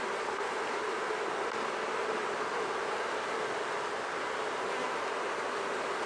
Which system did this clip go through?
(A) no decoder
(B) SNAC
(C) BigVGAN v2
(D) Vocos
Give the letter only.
A